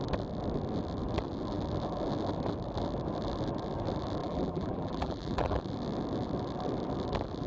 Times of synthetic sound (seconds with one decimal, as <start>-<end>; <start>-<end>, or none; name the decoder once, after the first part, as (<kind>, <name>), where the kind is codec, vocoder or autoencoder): 4.2-5.6 (vocoder, BigVGAN v2)